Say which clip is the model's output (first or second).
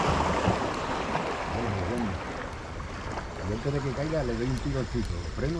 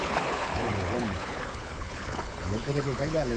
second